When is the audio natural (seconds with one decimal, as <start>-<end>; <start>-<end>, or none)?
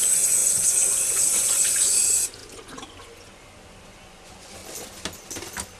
4.6-5.8